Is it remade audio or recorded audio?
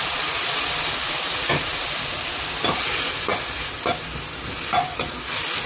recorded